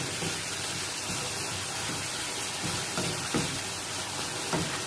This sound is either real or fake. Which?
real